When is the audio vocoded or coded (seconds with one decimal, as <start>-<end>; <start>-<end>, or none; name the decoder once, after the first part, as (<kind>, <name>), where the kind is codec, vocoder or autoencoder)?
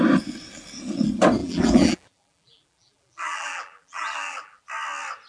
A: 1.4-4.6 (vocoder, BigVGAN v2)